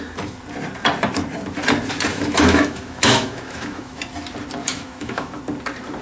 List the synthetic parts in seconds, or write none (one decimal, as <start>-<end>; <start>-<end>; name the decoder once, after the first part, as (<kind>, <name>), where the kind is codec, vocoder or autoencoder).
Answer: 2.1-4.0 (autoencoder, DAC-VAE); 4.6-5.4